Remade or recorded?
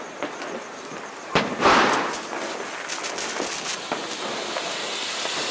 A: recorded